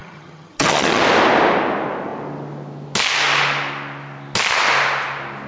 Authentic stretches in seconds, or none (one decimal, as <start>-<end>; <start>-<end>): 1.0-5.5